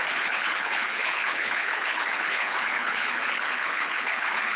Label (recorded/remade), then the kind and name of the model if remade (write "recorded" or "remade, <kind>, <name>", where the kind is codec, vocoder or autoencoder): remade, codec, HILCodec